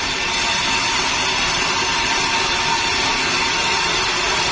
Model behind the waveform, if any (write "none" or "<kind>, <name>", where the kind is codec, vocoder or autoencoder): none